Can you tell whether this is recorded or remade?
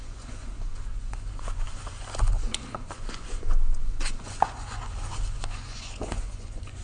remade